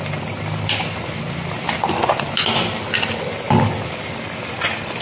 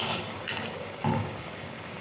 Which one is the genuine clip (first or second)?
first